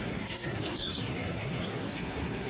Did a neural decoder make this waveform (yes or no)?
yes